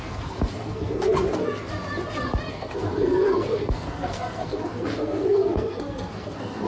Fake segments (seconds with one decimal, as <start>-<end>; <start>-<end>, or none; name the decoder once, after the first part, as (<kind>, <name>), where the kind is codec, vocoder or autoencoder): 0.0-1.7 (codec, SNAC); 2.5-6.7